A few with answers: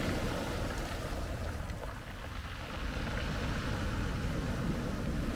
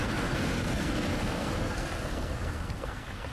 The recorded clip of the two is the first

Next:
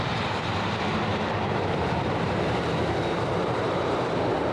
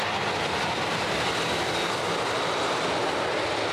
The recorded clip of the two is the second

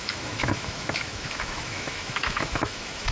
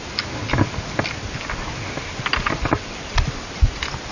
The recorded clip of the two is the second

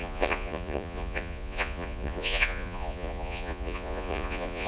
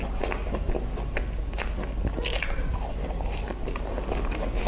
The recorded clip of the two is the second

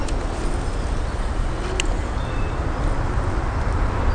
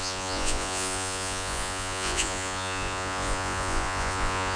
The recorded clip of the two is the first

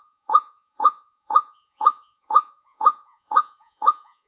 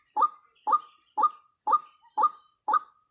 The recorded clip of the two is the second